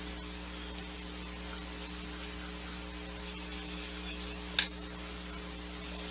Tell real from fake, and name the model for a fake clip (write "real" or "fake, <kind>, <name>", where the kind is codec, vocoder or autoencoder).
real